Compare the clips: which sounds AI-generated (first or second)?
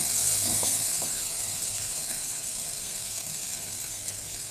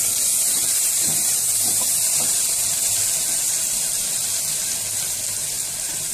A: first